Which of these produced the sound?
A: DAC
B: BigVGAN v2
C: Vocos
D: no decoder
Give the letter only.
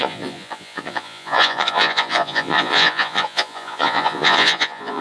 C